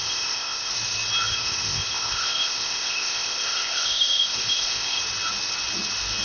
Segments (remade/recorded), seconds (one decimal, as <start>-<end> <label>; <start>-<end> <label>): 0.0-0.7 remade; 0.7-1.3 recorded; 1.3-5.0 remade; 5.0-6.2 recorded